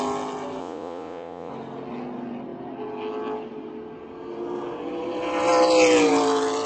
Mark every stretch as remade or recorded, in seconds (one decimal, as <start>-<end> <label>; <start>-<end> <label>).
0.0-0.6 recorded; 0.6-1.5 remade; 1.5-6.7 recorded